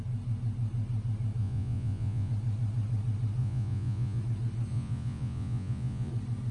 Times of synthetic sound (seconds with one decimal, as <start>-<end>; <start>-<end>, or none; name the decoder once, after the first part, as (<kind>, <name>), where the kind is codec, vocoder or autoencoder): 1.4-2.3 (vocoder, Vocos); 3.4-4.2; 4.7-6.1